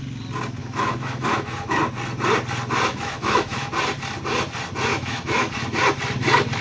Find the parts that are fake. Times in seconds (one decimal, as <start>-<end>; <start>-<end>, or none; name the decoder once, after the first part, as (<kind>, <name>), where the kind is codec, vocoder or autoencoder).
0.6-1.8 (autoencoder, DAC-VAE); 2.9-3.7; 4.9-5.5